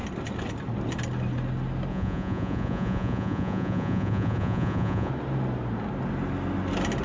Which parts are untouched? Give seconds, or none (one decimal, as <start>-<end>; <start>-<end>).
0.0-1.9; 5.1-7.0